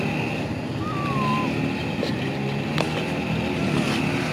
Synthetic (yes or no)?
no